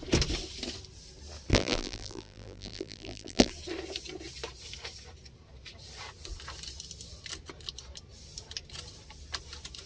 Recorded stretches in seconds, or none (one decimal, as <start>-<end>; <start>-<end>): 0.0-1.5; 3.5-9.9